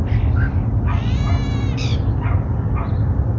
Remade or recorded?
recorded